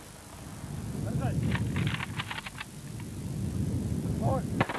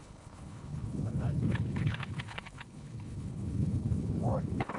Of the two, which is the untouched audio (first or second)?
first